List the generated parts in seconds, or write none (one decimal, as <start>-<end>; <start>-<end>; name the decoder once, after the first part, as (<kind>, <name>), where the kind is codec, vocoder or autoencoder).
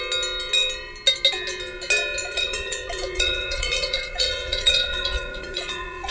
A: 2.2-6.1 (vocoder, Vocos)